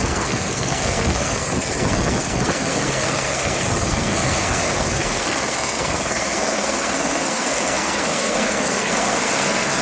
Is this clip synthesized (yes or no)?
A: yes